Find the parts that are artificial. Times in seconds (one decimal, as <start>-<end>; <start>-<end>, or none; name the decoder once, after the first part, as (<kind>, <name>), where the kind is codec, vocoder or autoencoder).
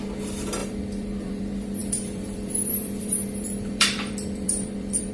0.6-1.4 (vocoder, BigVGAN v2); 1.8-5.1